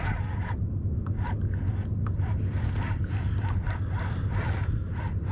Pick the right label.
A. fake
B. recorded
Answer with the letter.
B